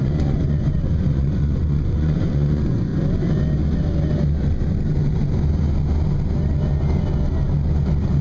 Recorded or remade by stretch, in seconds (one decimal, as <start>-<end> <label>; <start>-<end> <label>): 0.0-2.9 remade; 2.9-8.2 recorded